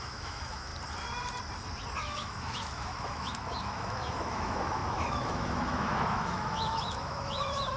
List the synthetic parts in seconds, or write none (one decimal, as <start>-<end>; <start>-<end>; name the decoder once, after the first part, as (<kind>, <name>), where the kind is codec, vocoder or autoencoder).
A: 0.0-0.7 (autoencoder, DAC-VAE); 2.0-7.8